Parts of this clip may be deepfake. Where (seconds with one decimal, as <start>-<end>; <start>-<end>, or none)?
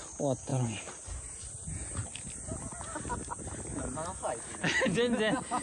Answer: 0.5-2.4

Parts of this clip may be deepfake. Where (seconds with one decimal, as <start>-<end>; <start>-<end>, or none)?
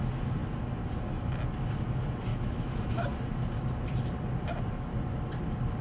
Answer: 2.3-3.0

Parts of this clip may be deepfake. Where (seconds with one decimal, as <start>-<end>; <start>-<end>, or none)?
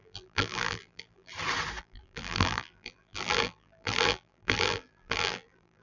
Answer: 0.0-1.3; 1.8-5.8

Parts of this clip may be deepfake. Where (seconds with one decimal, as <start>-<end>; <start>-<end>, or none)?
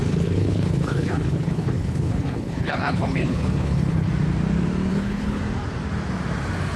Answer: 0.0-4.1; 4.9-5.4